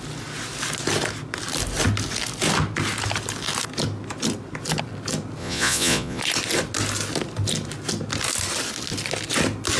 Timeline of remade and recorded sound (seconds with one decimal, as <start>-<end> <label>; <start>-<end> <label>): 0.0-5.4 recorded; 5.4-6.2 remade; 6.2-9.8 recorded